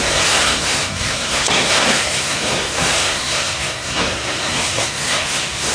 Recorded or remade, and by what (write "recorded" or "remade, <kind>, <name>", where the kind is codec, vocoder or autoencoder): remade, codec, SNAC